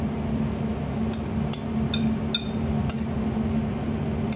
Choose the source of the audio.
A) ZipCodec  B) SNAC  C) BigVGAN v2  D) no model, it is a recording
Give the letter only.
D